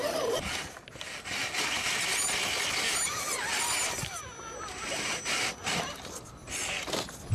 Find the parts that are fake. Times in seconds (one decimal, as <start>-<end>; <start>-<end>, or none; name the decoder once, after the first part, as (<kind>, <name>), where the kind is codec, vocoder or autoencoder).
none